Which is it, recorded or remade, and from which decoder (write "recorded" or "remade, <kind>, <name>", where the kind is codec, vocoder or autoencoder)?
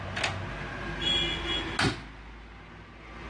recorded